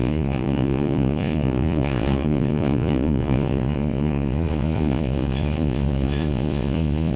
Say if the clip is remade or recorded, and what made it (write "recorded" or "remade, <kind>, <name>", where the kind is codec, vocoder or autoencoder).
remade, vocoder, Vocos